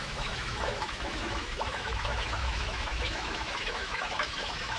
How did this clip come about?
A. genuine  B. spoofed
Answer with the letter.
B